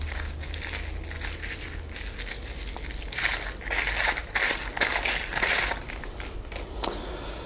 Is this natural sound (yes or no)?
yes